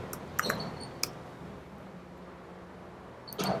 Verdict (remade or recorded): recorded